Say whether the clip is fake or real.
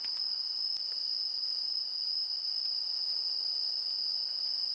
real